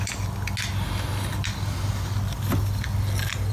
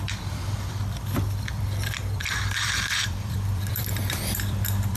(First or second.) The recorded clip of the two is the first